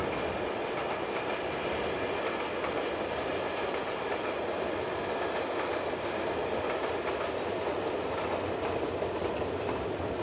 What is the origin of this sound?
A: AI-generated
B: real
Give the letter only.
B